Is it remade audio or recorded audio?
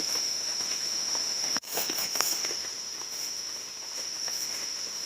remade